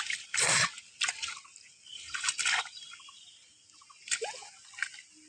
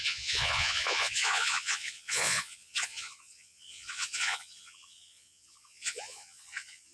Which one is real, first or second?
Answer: first